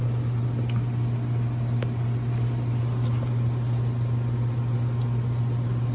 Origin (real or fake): real